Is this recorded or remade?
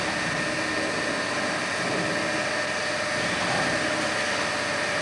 recorded